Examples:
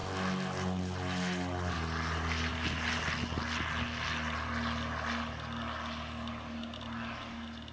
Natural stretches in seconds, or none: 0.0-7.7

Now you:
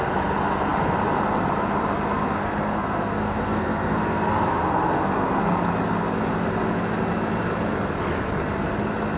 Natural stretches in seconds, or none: 0.0-2.4; 5.4-9.2

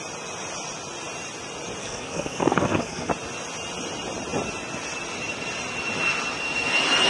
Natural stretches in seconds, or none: 0.0-1.8; 3.1-7.1

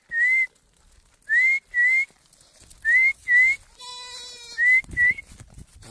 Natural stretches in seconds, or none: 0.0-5.9

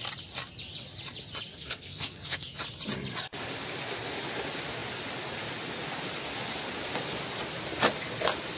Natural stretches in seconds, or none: 0.0-1.5; 2.6-8.6

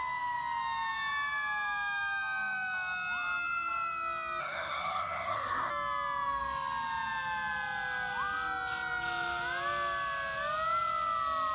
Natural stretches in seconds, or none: 0.0-4.4; 5.7-11.5

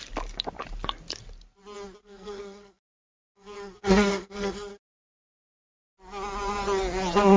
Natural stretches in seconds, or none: 0.0-2.0; 4.7-7.4